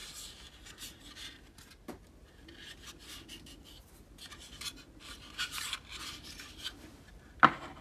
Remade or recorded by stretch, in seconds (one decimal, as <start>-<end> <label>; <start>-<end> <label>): 0.0-7.8 recorded